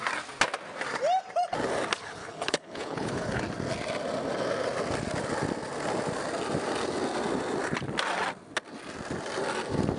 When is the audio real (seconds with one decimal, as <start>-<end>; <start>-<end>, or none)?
0.0-2.2; 3.4-10.0